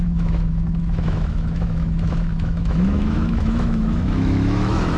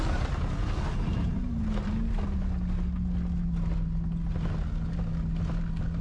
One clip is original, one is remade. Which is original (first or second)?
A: second